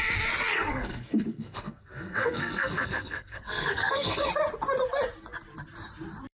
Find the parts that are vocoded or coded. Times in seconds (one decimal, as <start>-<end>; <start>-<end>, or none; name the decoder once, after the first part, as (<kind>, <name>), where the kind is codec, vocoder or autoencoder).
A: 0.5-4.3 (codec, SNAC)